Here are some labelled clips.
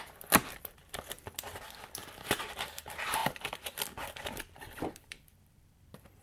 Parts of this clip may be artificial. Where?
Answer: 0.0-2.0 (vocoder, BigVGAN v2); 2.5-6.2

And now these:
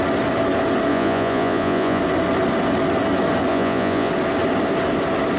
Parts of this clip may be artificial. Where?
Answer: 0.9-2.0 (vocoder, Vocos); 3.5-4.1

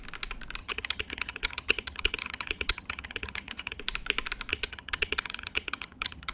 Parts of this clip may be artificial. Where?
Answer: 0.6-3.8 (vocoder, HiFi-GAN); 4.5-6.3

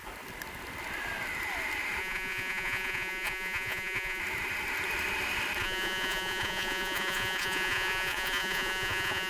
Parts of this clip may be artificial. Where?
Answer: 2.0-4.2 (vocoder, Vocos); 5.6-9.3

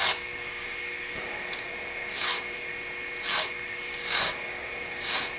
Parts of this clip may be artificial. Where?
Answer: 0.0-2.7 (codec, DAC); 3.5-5.4

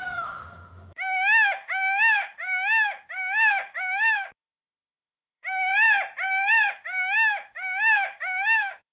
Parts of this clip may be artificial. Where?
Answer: 0.0-5.7 (autoencoder, DAC-VAE); 6.7-8.9

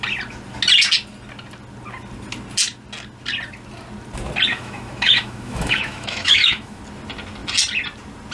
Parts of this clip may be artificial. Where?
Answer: 4.5-6.8 (autoencoder, DAC-VAE)

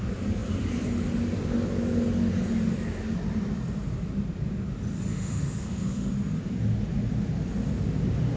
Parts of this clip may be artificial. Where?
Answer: 5.1-6.1 (autoencoder, DAC-VAE)